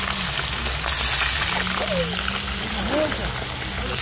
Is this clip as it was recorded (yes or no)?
yes